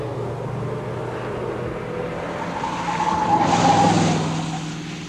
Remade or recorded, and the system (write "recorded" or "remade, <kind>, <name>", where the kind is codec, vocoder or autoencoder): recorded